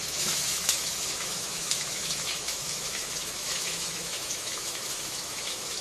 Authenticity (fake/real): fake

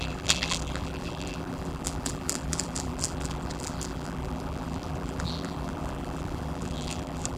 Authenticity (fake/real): fake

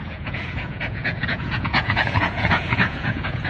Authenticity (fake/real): fake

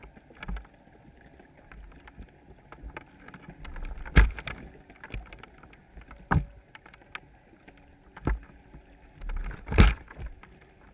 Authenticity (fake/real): real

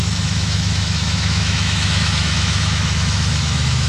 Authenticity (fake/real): fake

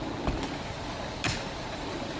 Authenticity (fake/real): real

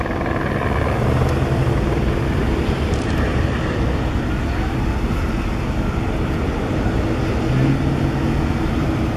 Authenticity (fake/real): real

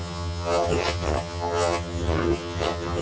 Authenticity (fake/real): fake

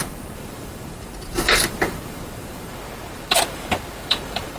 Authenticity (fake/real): fake